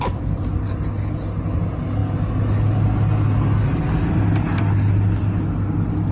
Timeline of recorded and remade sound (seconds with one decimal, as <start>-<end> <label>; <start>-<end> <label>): 0.0-6.1 recorded